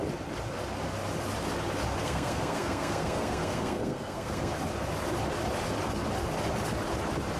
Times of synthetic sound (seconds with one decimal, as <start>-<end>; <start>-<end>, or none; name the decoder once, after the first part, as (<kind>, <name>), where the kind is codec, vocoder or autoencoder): 2.0-4.5 (codec, SNAC)